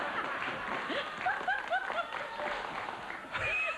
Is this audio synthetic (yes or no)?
no